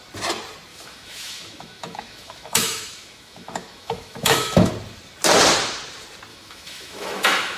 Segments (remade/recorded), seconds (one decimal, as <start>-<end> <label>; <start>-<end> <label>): 0.0-0.7 recorded; 0.7-4.7 remade; 4.7-6.3 recorded; 6.3-7.6 remade